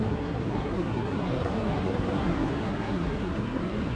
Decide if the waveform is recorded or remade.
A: remade